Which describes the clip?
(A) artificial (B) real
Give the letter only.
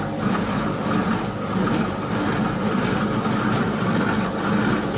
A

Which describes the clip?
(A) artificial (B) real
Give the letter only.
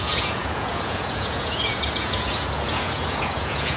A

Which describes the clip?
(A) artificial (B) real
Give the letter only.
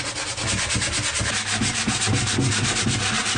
B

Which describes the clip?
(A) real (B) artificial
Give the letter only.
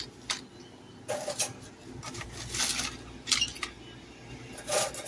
A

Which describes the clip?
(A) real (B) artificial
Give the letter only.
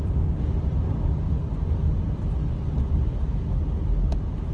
A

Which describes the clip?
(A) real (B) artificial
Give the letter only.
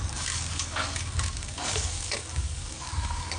B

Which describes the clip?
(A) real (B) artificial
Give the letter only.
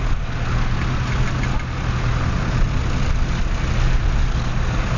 A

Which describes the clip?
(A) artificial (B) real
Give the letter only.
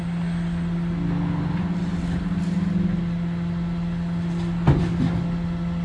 B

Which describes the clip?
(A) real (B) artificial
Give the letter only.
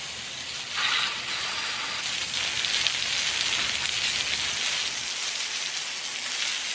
A